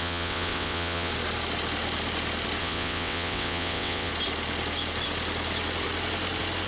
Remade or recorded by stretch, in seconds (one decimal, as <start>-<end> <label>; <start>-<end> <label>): 0.0-1.1 remade; 1.1-2.6 recorded; 2.6-4.1 remade; 4.1-6.7 recorded